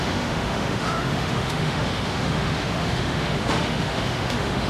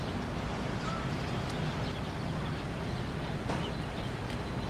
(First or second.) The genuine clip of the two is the second